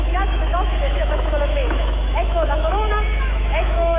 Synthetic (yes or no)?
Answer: yes